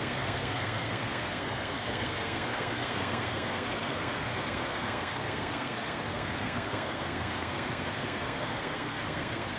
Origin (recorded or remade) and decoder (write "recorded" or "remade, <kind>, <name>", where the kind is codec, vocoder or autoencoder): remade, codec, SNAC